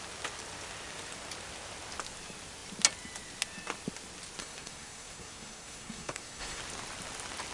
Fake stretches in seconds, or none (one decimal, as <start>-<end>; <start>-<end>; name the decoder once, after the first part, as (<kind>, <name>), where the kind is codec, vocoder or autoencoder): 4.4-6.6 (codec, SNAC)